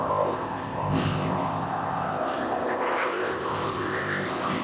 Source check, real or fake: fake